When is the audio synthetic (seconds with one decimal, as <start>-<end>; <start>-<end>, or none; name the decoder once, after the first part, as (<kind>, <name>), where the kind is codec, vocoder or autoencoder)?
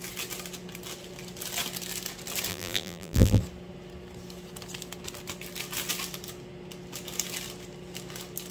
2.5-3.4 (vocoder, BigVGAN v2)